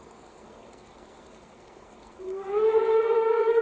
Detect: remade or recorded remade